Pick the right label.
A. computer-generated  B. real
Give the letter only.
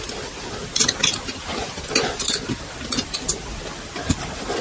B